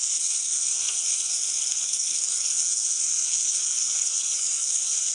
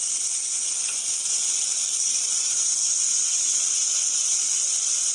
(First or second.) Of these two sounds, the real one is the second